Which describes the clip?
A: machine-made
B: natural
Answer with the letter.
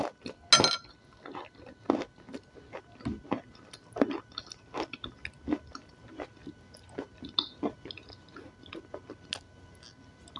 B